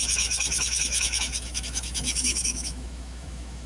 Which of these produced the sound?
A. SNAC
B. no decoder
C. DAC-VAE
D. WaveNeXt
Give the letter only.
C